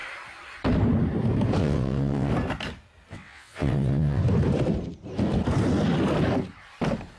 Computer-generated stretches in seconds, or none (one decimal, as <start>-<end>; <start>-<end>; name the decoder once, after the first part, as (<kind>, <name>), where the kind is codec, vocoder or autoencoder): 1.6-2.3 (vocoder, WaveNeXt); 3.1-4.2